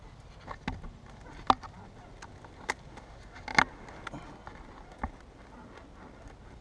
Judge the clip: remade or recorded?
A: recorded